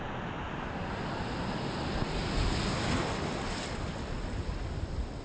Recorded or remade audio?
recorded